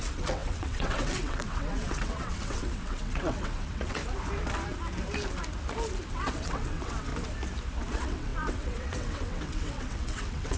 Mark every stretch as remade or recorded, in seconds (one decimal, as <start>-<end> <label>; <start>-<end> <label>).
0.0-4.0 remade; 4.0-6.1 recorded; 6.1-7.1 remade; 7.1-7.9 recorded; 7.9-10.6 remade